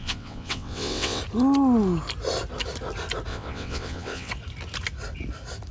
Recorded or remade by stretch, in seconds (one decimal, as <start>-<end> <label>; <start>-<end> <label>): 0.0-1.2 remade; 1.2-3.3 recorded; 3.3-4.3 remade; 4.3-5.7 recorded